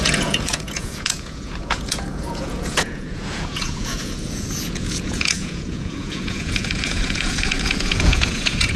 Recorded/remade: remade